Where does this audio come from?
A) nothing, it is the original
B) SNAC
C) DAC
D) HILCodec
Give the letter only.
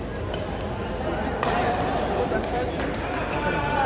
A